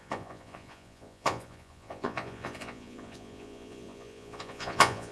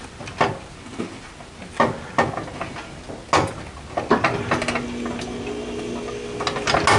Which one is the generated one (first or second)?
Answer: first